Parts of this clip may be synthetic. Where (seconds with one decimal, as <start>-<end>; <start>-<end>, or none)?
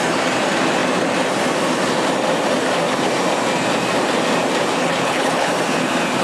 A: 4.8-5.5